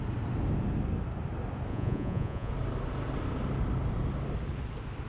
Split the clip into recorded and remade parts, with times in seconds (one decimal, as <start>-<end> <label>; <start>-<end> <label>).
0.0-1.7 recorded; 1.7-2.5 remade; 2.5-5.1 recorded